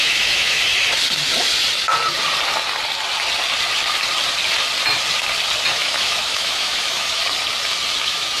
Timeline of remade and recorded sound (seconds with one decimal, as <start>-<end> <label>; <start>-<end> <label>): 0.0-0.7 remade; 0.7-5.7 recorded; 5.7-7.2 remade; 7.2-8.0 recorded; 8.0-8.4 remade